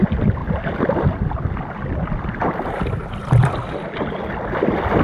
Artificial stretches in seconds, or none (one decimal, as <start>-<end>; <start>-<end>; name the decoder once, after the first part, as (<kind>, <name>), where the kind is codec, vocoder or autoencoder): none